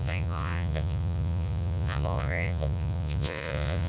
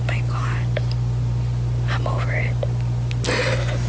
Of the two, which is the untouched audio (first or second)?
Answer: second